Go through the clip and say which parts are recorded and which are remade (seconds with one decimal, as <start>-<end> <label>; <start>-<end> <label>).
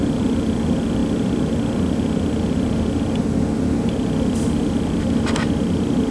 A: 0.0-6.1 recorded